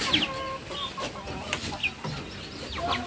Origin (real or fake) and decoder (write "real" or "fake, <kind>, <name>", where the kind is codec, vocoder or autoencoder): real